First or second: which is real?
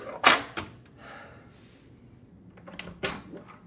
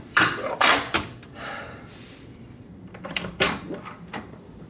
first